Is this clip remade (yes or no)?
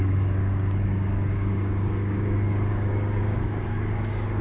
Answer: yes